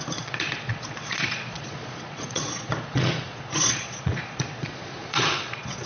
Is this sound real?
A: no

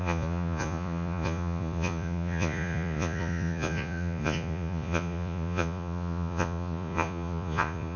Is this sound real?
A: no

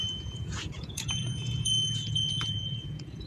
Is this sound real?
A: no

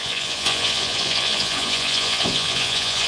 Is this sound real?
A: no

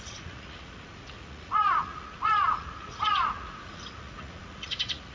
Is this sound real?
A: no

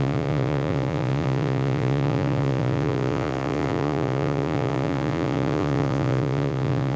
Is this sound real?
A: no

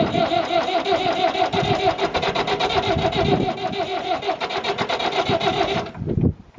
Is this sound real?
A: yes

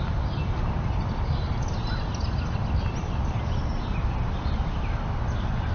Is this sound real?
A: yes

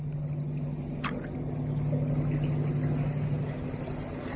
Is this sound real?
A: yes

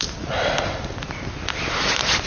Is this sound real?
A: yes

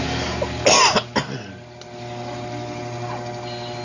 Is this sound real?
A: yes